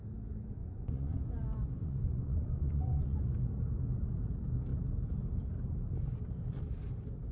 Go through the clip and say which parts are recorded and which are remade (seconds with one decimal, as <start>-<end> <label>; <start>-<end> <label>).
0.0-0.6 recorded; 0.6-1.2 remade; 1.2-1.8 recorded; 1.8-3.3 remade; 3.3-7.3 recorded